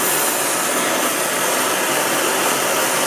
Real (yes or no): yes